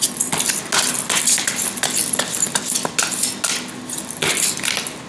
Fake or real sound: real